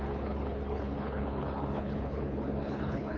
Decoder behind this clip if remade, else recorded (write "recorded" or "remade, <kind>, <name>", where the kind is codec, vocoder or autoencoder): remade, codec, HILCodec